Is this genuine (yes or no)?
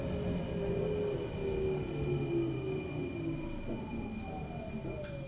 yes